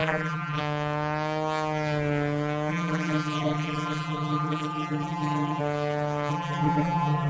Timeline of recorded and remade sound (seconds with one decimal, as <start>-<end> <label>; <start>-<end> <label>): 0.0-0.6 remade; 0.6-2.7 recorded; 2.7-5.6 remade; 5.6-6.3 recorded; 6.3-7.3 remade